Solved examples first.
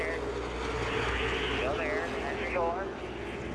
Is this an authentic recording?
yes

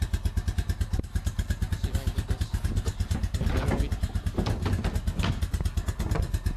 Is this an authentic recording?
yes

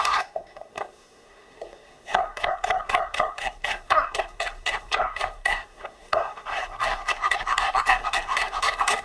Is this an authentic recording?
no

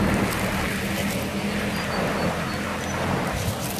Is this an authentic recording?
yes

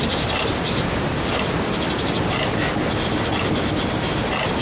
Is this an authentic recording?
yes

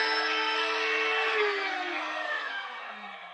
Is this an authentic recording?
no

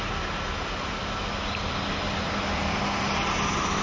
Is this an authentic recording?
yes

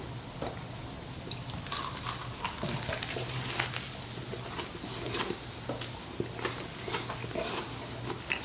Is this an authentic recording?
yes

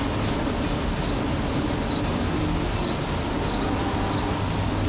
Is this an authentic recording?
yes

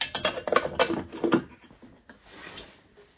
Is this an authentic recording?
yes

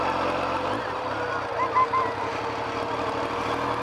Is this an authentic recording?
yes